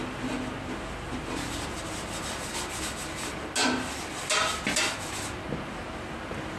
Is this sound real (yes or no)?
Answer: yes